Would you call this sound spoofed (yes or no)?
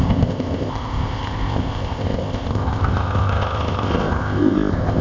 yes